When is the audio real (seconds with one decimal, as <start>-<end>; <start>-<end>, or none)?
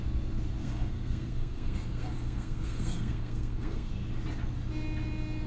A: 0.0-0.6; 3.9-5.5